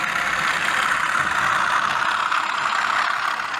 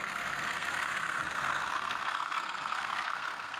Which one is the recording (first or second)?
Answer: first